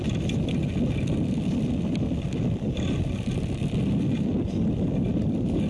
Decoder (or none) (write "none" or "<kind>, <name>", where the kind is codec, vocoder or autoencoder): none